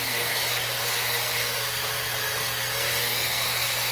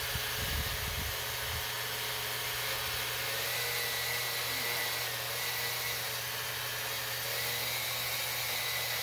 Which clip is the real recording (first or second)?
second